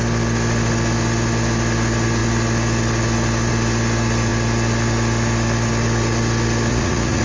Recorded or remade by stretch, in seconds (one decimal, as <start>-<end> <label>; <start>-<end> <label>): 0.0-6.7 recorded; 6.7-7.2 remade